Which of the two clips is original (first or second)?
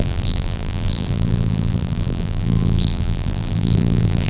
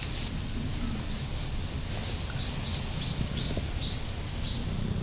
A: second